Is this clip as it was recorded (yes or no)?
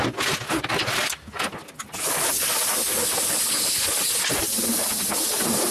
yes